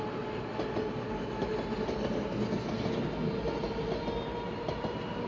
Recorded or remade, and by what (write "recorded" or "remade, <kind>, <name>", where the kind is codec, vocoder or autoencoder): recorded